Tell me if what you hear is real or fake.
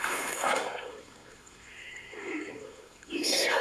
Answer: fake